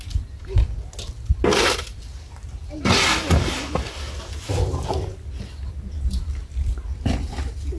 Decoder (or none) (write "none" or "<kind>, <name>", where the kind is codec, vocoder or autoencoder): none